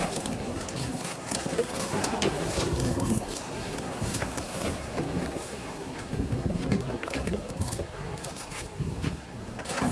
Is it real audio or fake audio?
fake